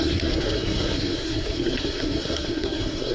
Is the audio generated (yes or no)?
yes